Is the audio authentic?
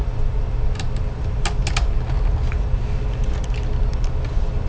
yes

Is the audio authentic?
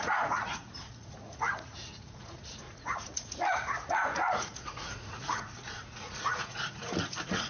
no